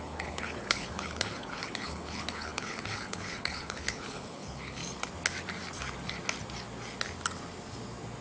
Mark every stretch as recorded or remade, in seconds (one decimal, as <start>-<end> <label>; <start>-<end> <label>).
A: 0.0-4.8 remade; 4.8-8.2 recorded

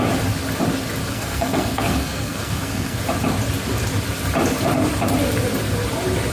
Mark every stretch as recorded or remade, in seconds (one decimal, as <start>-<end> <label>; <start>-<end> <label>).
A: 0.0-1.1 recorded; 1.1-3.0 remade; 3.0-6.3 recorded

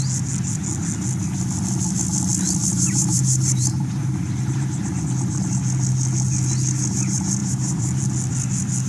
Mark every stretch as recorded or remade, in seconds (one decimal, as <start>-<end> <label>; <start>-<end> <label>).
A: 0.0-2.6 recorded; 2.6-5.0 remade; 5.0-7.4 recorded; 7.4-8.0 remade; 8.0-8.9 recorded

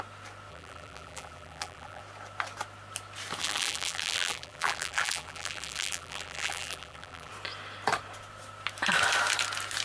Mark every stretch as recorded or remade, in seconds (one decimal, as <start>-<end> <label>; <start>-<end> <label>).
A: 0.0-0.5 recorded; 0.5-2.0 remade; 2.0-3.4 recorded; 3.4-7.3 remade; 7.3-9.8 recorded

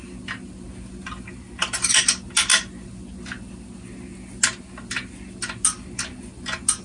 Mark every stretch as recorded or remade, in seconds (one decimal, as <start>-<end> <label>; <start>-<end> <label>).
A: 0.0-6.8 recorded

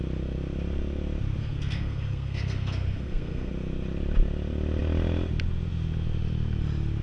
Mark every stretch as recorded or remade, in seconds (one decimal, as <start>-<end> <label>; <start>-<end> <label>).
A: 0.0-1.4 recorded; 1.4-3.5 remade; 3.5-7.0 recorded

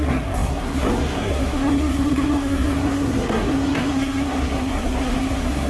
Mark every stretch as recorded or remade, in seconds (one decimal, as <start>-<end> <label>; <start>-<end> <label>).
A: 0.0-5.7 remade